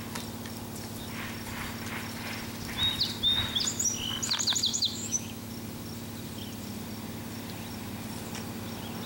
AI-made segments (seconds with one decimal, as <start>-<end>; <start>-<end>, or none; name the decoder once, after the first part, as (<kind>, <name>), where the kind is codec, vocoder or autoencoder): 4.7-5.5 (autoencoder, DAC-VAE)

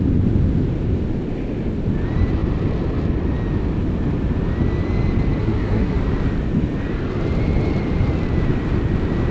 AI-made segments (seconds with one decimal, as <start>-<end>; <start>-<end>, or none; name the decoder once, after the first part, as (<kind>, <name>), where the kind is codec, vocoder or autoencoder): 5.4-6.0 (codec, SNAC)